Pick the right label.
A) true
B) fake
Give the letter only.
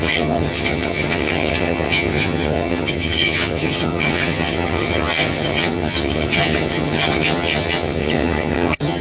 B